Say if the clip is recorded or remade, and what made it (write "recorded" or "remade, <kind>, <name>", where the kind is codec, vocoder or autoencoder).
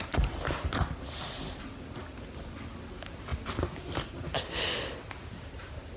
recorded